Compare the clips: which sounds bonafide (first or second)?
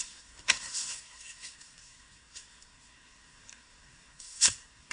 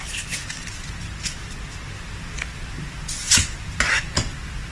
second